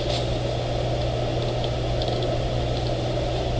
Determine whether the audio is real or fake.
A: real